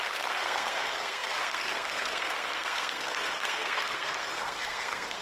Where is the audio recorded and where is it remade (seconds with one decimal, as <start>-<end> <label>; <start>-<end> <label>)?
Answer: 0.0-5.2 remade